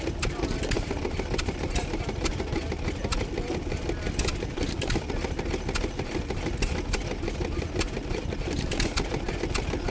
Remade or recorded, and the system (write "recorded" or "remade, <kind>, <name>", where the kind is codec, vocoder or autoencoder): recorded